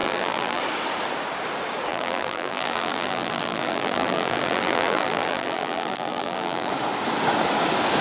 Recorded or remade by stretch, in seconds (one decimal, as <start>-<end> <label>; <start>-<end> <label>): 0.0-0.6 remade; 0.6-1.9 recorded; 1.9-6.7 remade; 6.7-8.0 recorded